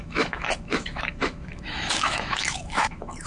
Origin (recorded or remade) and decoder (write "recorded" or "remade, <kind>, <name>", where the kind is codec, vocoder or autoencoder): remade, autoencoder, DAC-VAE